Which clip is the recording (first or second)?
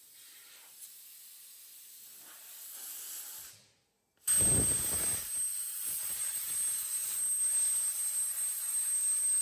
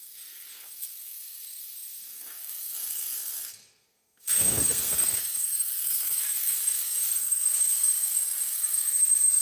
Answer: first